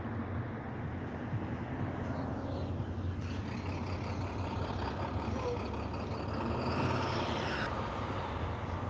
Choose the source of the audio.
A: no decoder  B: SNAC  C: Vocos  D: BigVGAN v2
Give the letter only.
A